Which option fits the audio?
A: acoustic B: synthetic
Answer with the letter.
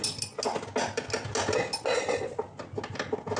A